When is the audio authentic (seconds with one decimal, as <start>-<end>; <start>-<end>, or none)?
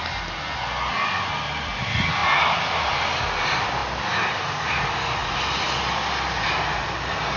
0.0-7.4